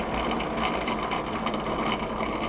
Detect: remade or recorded recorded